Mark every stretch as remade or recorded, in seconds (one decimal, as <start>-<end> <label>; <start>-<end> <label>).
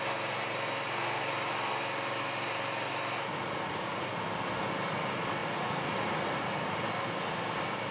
0.0-3.3 recorded; 3.3-4.1 remade; 4.1-5.4 recorded; 5.4-6.9 remade; 6.9-7.9 recorded